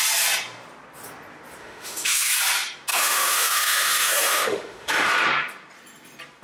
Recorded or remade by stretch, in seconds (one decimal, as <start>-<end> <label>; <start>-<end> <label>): 0.0-1.6 recorded; 1.6-2.3 remade; 2.3-2.9 recorded; 2.9-5.1 remade; 5.1-6.4 recorded